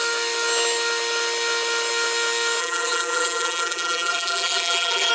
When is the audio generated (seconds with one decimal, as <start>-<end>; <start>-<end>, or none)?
2.6-5.1